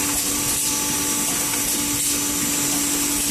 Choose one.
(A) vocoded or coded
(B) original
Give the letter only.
B